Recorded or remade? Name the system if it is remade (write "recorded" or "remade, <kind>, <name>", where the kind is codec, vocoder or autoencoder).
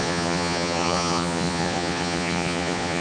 remade, vocoder, Vocos